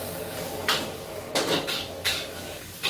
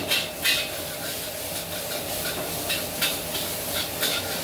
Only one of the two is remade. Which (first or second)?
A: first